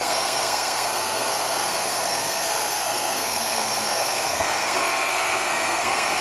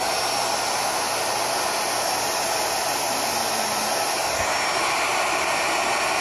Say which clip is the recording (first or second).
second